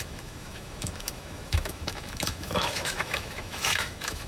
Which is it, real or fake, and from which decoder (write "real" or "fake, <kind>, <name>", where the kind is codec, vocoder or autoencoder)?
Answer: fake, autoencoder, DAC-VAE